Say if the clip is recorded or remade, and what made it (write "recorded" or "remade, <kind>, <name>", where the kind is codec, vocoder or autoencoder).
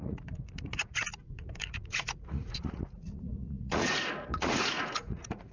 remade, vocoder, Vocos